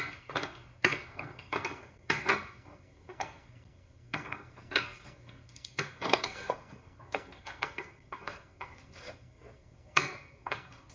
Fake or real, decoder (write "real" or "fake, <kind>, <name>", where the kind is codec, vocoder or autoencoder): fake, codec, SNAC